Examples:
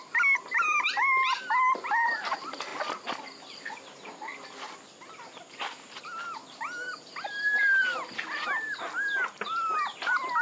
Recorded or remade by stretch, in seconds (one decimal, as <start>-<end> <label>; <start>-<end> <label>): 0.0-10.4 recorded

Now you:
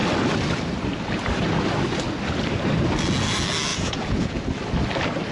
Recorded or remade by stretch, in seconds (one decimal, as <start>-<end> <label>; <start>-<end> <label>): 0.0-3.7 recorded; 3.7-4.4 remade; 4.4-5.3 recorded

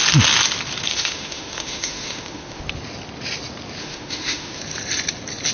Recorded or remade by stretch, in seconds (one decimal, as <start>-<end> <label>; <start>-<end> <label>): 0.0-0.9 recorded; 0.9-2.6 remade; 2.6-3.8 recorded; 3.8-4.6 remade; 4.6-5.5 recorded

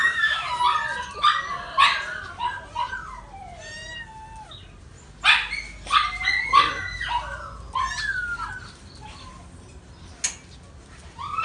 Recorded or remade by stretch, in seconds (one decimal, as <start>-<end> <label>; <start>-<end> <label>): 0.0-0.6 remade; 0.6-11.4 recorded

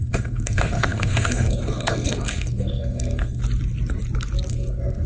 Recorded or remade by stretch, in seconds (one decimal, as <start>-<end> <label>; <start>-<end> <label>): 0.0-3.4 remade; 3.4-4.5 recorded; 4.5-5.1 remade

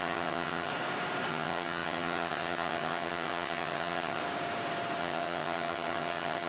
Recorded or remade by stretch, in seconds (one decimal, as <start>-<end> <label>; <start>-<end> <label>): 0.0-0.7 remade; 0.7-1.3 recorded; 1.3-4.2 remade; 4.2-5.0 recorded; 5.0-6.5 remade